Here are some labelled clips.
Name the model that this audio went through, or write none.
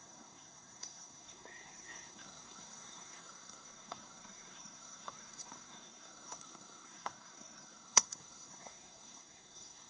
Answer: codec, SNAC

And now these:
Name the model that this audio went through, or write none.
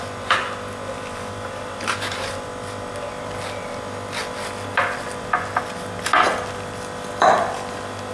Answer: none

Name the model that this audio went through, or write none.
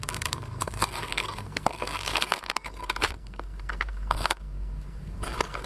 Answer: codec, SNAC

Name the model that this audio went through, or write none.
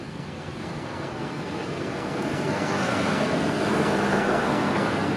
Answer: codec, SNAC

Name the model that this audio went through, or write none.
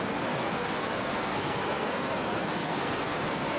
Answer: codec, SNAC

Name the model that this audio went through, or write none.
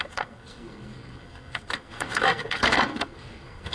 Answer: codec, SNAC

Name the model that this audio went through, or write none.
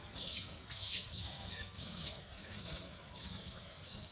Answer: codec, SNAC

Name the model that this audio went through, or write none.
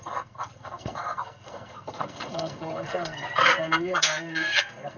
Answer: codec, SNAC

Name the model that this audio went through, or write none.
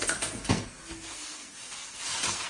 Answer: codec, SNAC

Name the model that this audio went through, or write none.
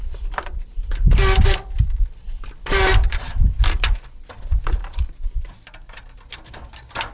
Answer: none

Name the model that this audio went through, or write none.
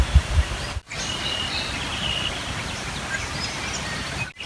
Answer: none